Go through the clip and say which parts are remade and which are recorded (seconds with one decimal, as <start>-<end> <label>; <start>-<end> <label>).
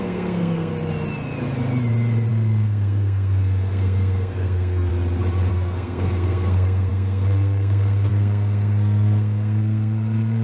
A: 0.0-0.7 remade; 0.7-2.3 recorded; 2.3-4.9 remade; 4.9-5.5 recorded; 5.5-10.4 remade